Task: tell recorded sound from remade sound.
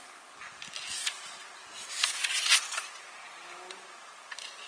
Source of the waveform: recorded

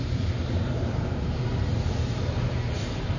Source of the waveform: remade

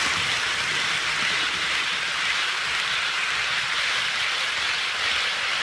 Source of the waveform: recorded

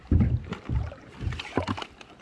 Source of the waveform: recorded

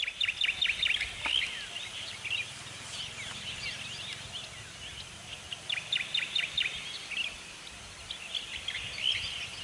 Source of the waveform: recorded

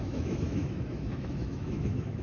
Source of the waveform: remade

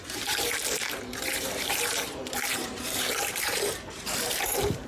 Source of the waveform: remade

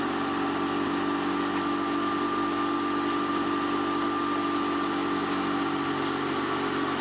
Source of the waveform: recorded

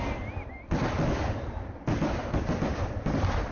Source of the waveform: recorded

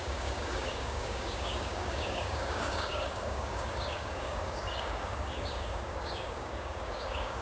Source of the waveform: remade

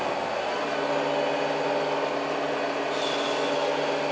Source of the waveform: recorded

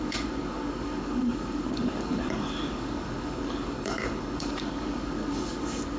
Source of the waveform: remade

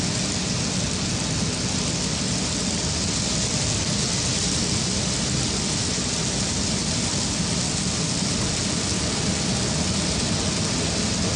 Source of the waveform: recorded